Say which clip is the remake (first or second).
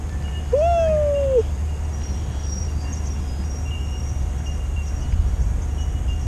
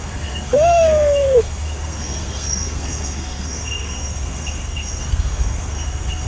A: second